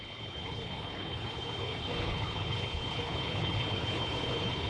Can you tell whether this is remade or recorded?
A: remade